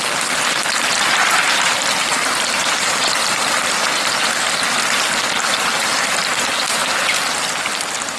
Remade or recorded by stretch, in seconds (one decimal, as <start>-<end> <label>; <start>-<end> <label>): 0.0-0.9 recorded; 0.9-4.1 remade; 4.1-8.2 recorded